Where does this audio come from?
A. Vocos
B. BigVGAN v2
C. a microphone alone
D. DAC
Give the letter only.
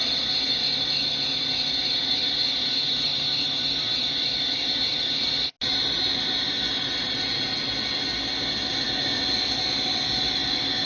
C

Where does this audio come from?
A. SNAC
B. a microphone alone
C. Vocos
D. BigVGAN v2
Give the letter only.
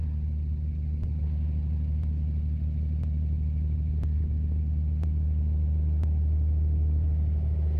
B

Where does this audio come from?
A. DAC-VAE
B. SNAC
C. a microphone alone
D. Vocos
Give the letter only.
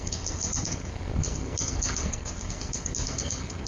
B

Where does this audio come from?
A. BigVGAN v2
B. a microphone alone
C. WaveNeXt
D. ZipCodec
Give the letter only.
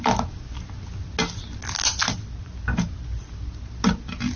B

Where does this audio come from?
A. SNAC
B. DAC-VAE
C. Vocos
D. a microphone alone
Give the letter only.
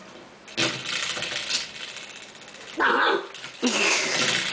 D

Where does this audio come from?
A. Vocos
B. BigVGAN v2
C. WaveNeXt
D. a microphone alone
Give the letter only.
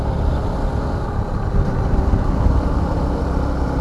D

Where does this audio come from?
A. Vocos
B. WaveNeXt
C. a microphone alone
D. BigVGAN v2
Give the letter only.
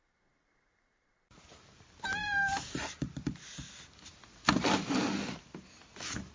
C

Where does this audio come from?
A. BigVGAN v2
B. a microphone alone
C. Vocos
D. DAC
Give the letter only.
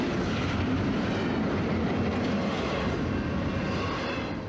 B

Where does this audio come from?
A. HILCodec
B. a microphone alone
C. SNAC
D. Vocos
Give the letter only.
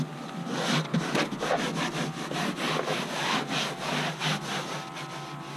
B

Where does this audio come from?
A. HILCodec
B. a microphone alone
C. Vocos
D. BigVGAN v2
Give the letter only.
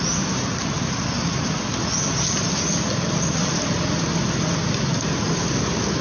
B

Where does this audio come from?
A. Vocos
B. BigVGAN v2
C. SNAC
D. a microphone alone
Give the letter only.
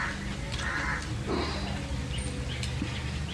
D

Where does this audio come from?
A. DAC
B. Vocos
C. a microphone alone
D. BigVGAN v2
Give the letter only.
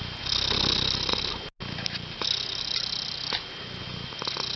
C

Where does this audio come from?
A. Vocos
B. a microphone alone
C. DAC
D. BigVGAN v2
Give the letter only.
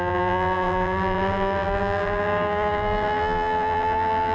D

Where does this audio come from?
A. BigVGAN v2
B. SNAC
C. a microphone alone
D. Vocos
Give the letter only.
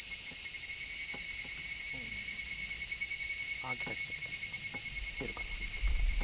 C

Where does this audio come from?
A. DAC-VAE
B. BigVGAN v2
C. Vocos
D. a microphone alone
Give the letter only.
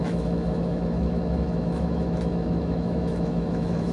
A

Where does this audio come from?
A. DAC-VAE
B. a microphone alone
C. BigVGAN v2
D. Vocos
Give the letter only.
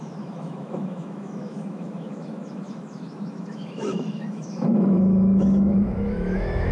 A